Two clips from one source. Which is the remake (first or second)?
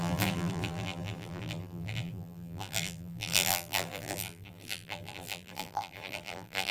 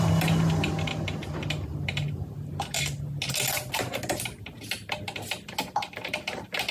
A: first